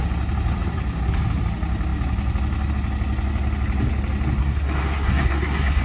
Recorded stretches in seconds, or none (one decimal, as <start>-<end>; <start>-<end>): 0.0-4.4